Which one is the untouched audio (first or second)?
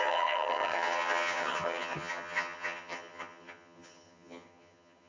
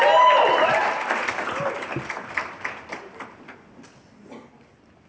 second